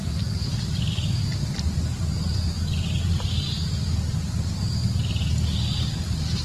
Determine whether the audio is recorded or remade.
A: recorded